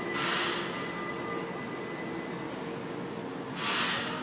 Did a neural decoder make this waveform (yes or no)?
no